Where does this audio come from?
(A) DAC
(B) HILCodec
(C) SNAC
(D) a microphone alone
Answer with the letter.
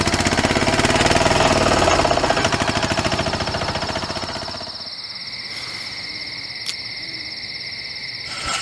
D